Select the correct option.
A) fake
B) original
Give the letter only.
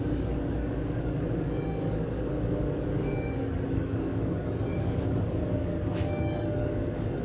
A